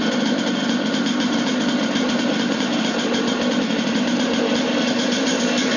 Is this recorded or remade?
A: remade